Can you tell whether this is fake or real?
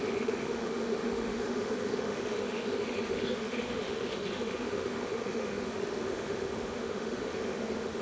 fake